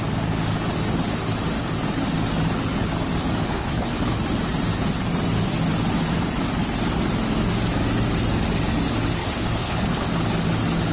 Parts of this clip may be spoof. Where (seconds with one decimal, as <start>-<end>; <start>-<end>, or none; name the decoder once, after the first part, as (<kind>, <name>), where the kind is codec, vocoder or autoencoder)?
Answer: 3.4-4.0 (codec, HILCodec); 9.2-10.1